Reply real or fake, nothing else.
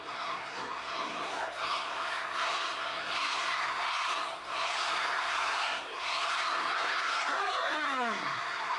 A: fake